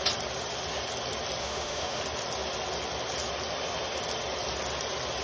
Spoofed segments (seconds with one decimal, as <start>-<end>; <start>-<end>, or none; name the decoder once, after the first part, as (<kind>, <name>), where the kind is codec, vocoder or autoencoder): 1.4-2.0 (autoencoder, DAC-VAE)